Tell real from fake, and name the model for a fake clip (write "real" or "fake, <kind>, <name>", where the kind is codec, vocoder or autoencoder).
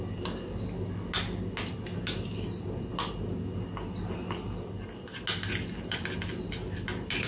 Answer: real